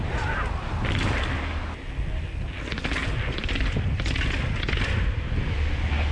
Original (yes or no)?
yes